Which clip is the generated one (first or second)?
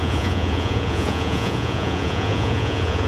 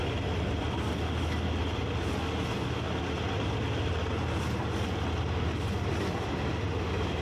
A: first